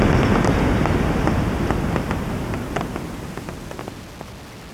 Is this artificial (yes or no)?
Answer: no